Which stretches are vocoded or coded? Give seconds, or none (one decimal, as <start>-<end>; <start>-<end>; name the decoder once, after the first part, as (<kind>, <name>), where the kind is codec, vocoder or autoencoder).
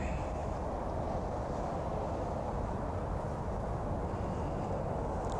none